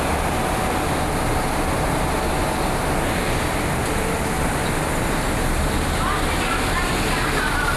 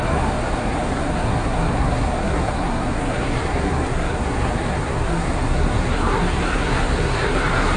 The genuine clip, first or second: first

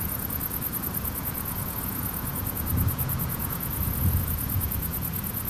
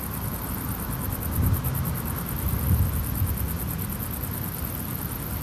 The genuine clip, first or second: second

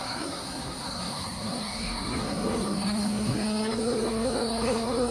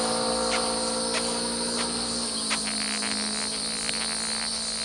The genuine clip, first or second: second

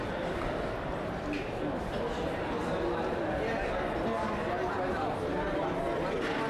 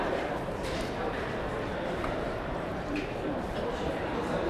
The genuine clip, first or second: first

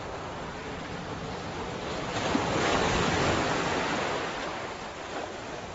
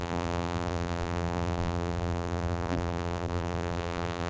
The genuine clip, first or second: first